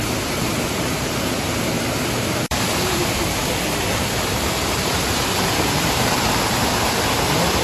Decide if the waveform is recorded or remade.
remade